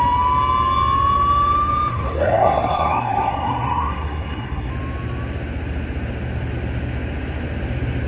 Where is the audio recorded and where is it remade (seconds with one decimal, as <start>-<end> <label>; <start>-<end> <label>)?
0.0-1.9 recorded; 1.9-4.7 remade; 4.7-8.1 recorded